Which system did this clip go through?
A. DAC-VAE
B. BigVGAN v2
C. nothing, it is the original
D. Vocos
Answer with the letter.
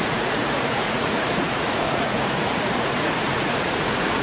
D